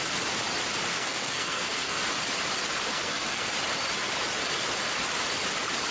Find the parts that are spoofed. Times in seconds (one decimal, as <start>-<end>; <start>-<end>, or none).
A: 0.9-2.0; 2.9-3.5